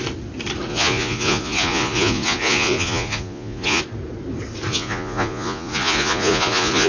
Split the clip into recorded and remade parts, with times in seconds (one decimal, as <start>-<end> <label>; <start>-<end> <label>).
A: 0.0-0.7 recorded; 0.7-3.8 remade; 3.8-4.7 recorded; 4.7-6.9 remade